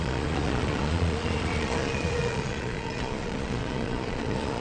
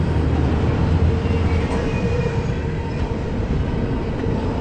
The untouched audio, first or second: second